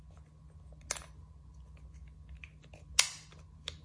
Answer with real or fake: real